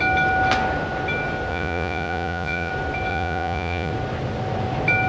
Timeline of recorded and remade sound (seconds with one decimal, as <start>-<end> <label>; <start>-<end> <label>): 0.0-1.5 recorded; 1.5-2.7 remade; 2.7-3.1 recorded; 3.1-3.9 remade; 3.9-5.1 recorded